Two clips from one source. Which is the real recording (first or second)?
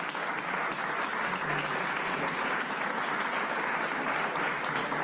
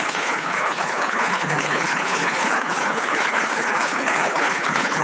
first